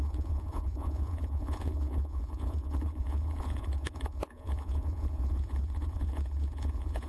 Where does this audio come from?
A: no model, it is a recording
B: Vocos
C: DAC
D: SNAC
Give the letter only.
B